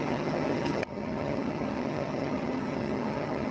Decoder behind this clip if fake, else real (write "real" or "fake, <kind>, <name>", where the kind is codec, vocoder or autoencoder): fake, vocoder, HiFi-GAN